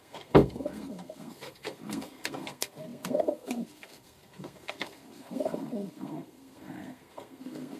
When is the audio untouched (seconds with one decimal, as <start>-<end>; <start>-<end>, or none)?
none